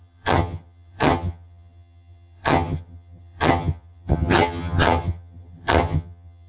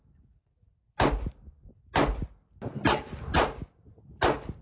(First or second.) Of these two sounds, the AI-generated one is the first